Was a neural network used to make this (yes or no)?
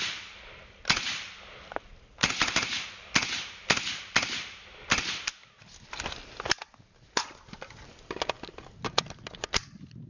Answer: no